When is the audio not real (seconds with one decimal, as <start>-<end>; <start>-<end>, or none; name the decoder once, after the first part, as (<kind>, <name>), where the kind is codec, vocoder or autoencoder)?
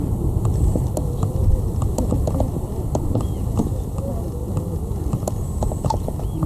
0.0-6.5 (vocoder, BigVGAN v2)